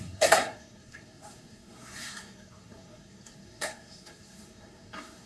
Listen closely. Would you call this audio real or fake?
fake